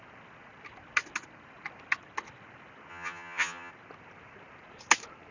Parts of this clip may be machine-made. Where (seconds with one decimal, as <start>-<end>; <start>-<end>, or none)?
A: 2.9-3.7